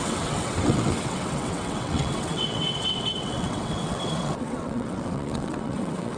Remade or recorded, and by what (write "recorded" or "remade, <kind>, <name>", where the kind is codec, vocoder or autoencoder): remade, vocoder, WaveNeXt